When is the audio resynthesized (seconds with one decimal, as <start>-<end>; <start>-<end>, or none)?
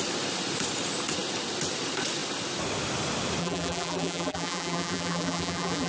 3.4-5.9